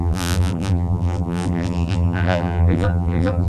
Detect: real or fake fake